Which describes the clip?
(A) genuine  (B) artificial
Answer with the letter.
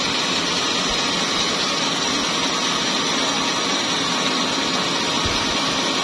A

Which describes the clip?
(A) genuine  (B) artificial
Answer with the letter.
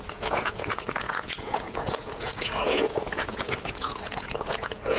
B